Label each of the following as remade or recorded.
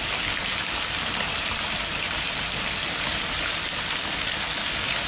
remade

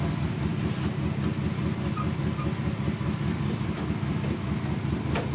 remade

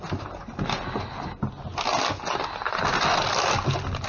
recorded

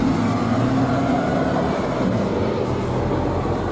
recorded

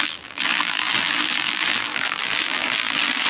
remade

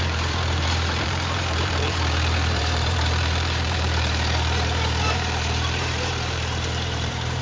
remade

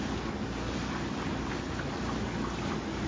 recorded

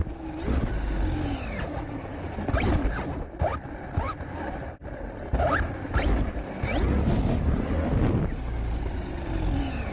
recorded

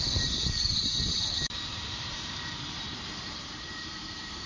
remade